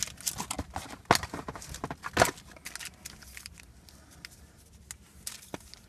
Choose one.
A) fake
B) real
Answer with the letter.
B